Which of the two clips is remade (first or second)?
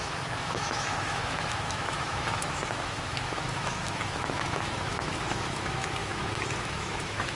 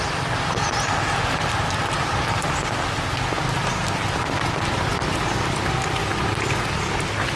first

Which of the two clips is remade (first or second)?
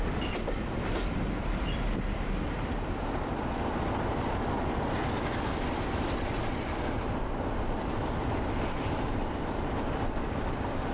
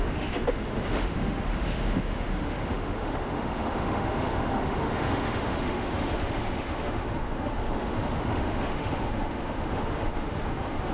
second